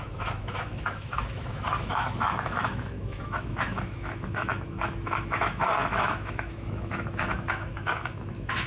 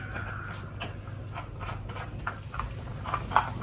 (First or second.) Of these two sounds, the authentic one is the second